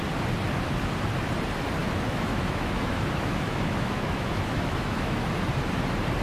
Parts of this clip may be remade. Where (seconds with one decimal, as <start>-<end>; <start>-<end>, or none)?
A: 1.8-5.5